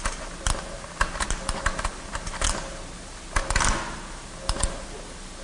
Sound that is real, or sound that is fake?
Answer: real